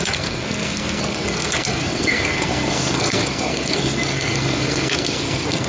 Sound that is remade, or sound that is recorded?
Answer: remade